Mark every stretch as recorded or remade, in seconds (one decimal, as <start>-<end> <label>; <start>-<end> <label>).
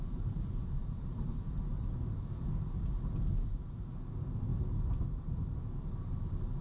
0.0-6.6 recorded